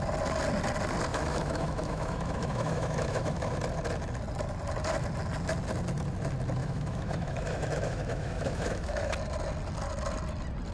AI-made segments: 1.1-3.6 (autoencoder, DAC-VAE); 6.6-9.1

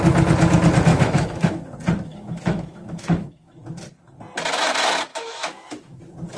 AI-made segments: 0.9-1.7 (autoencoder, DAC-VAE); 2.1-3.5; 5.1-6.0

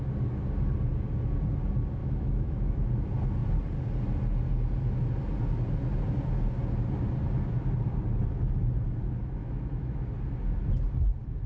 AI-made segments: 2.0-2.9 (autoencoder, DAC-VAE); 9.4-10.0